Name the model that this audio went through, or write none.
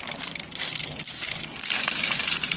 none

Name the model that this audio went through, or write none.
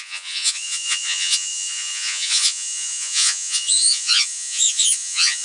vocoder, Vocos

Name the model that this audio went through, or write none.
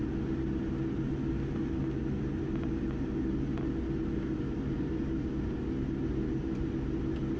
none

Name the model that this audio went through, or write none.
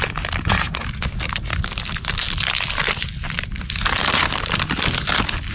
none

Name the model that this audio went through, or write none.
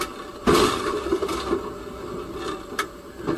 none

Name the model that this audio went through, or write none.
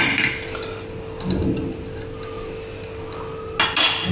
none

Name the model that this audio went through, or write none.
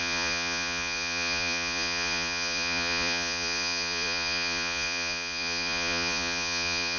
vocoder, Vocos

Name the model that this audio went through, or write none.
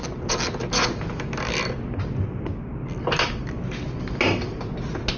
none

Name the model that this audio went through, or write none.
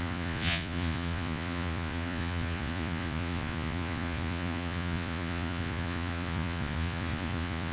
vocoder, Vocos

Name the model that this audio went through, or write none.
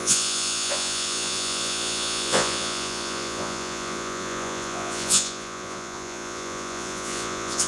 vocoder, Vocos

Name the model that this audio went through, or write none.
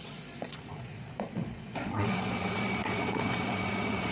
vocoder, Vocos